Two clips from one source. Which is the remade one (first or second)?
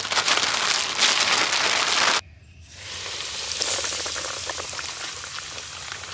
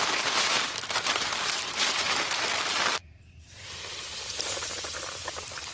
second